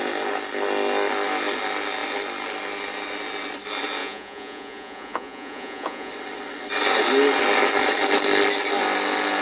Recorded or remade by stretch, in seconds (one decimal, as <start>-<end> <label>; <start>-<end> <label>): 0.0-4.0 recorded; 4.0-6.1 remade; 6.1-9.4 recorded